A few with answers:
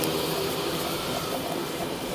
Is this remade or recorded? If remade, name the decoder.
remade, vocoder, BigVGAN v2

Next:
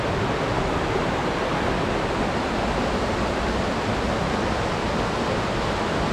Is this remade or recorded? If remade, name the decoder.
recorded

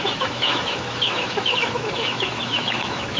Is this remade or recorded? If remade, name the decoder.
remade, autoencoder, DAC-VAE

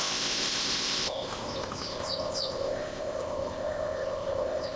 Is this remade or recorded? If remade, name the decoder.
remade, codec, ZipCodec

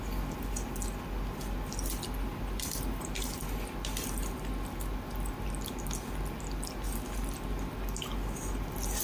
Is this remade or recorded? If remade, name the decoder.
recorded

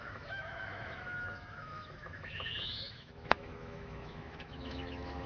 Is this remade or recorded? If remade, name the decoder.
remade, autoencoder, DAC-VAE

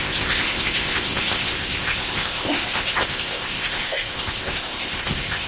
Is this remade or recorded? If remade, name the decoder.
remade, codec, ZipCodec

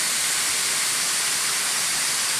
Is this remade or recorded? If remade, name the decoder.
recorded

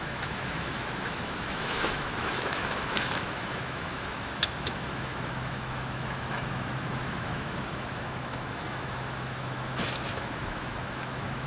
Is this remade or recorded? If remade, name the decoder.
remade, autoencoder, DAC-VAE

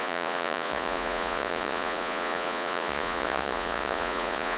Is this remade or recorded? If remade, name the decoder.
remade, vocoder, Vocos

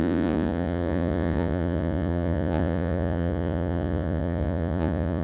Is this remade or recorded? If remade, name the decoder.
remade, vocoder, Vocos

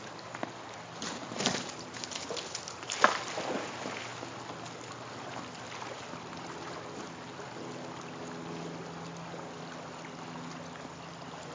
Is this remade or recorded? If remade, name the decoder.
recorded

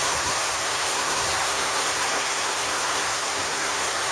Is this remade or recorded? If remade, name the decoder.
remade, codec, SNAC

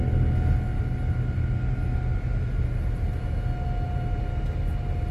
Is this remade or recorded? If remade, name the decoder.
recorded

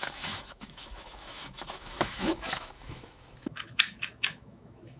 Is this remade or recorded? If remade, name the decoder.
remade, autoencoder, DAC-VAE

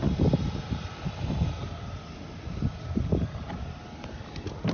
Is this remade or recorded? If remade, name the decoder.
recorded